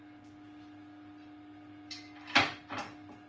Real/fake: real